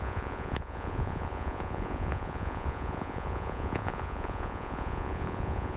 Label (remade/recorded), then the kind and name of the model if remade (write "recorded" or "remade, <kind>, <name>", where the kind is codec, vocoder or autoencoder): remade, vocoder, Vocos